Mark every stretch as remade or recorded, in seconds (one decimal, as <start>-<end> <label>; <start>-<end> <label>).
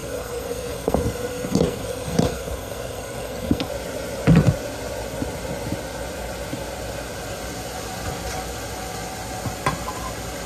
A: 0.0-3.7 remade; 3.7-10.5 recorded